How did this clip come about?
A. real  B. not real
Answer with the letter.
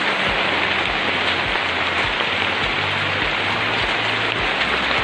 A